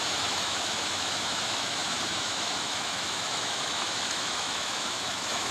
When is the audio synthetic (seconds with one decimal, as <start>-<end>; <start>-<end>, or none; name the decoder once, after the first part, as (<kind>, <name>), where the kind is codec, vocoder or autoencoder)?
0.0-5.5 (autoencoder, DAC-VAE)